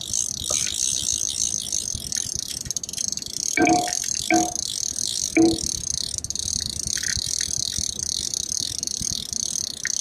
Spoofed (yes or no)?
yes